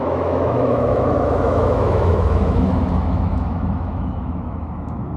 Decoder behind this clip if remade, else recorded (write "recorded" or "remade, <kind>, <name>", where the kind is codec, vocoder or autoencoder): remade, autoencoder, DAC-VAE